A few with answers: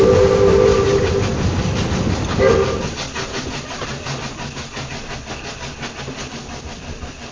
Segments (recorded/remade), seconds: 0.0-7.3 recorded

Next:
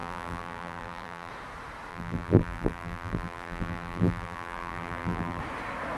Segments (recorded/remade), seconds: 0.0-1.3 remade; 1.3-1.9 recorded; 1.9-5.4 remade; 5.4-6.0 recorded

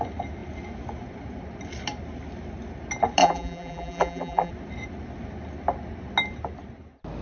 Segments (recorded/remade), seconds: 0.0-3.2 recorded; 3.2-4.5 remade; 4.5-7.2 recorded

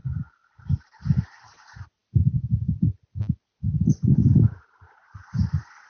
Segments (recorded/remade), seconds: 0.0-5.9 recorded

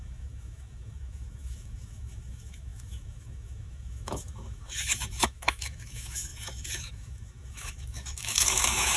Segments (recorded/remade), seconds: 0.0-9.0 remade

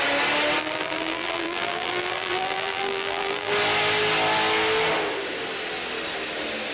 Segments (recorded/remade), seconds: 0.0-0.6 recorded; 0.6-3.5 remade; 3.5-6.7 recorded

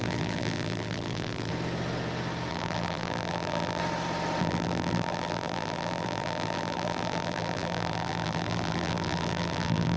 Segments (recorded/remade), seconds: 0.0-1.5 remade; 1.5-2.5 recorded; 2.5-3.8 remade; 3.8-4.4 recorded; 4.4-10.0 remade